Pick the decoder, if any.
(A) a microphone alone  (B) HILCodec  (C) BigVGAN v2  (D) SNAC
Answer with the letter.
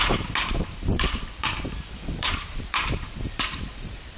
C